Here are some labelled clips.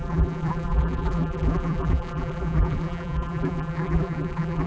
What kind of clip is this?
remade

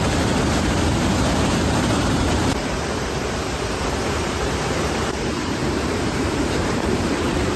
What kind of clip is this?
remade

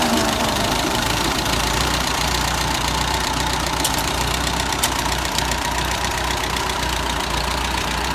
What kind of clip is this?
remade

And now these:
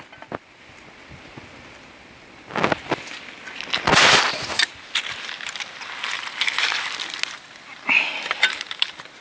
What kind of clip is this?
recorded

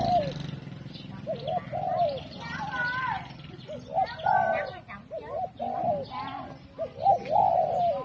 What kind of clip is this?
remade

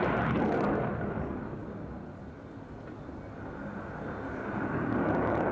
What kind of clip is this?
recorded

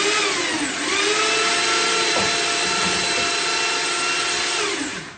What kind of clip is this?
recorded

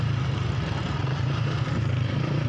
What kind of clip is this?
remade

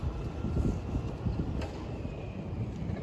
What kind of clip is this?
remade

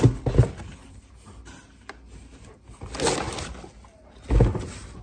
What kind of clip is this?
recorded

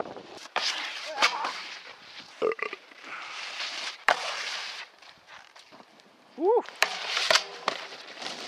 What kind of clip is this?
remade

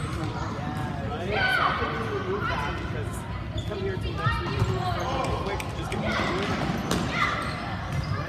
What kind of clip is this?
recorded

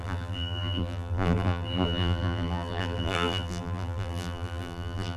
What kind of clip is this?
remade